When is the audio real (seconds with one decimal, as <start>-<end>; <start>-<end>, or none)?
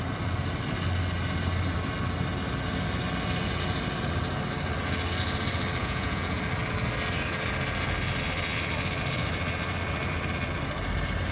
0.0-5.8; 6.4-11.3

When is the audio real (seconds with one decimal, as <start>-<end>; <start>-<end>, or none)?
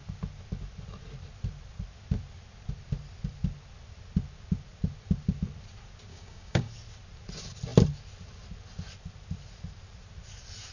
0.0-6.1; 6.7-10.7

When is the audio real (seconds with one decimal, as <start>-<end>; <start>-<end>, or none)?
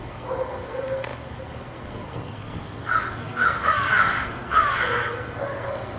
none